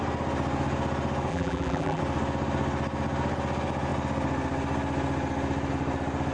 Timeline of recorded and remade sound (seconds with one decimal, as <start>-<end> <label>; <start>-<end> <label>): 0.0-1.3 recorded; 1.3-2.0 remade; 2.0-6.3 recorded